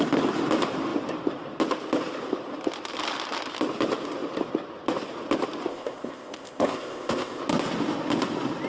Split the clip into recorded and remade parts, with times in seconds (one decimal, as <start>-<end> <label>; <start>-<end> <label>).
0.0-5.7 recorded; 5.7-7.4 remade; 7.4-8.7 recorded

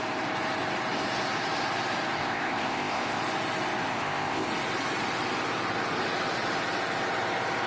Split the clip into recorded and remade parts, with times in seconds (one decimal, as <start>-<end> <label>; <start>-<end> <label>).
0.0-2.2 recorded; 2.2-3.2 remade; 3.2-3.9 recorded; 3.9-4.5 remade; 4.5-7.7 recorded

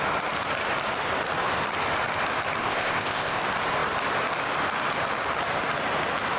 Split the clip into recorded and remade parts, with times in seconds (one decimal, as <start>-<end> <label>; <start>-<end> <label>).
0.0-2.6 recorded; 2.6-3.4 remade; 3.4-6.4 recorded

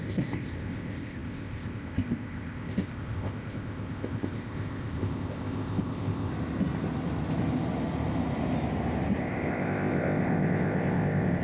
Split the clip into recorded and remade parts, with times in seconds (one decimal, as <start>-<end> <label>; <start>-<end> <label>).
0.0-6.3 remade; 6.3-9.2 recorded; 9.2-11.4 remade